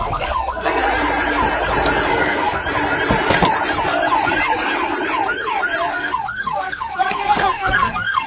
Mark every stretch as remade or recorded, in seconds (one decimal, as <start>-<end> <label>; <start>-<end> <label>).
0.0-0.8 remade; 0.8-2.1 recorded; 2.1-2.6 remade; 2.6-5.9 recorded; 5.9-8.3 remade